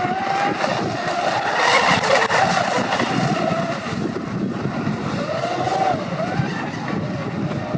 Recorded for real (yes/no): yes